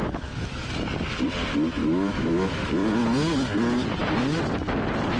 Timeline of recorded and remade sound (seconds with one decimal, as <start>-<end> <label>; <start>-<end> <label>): 0.0-0.7 remade; 0.7-1.8 recorded; 1.8-2.7 remade; 2.7-5.2 recorded